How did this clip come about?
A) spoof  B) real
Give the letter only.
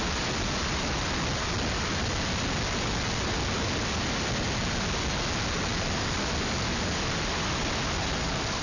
B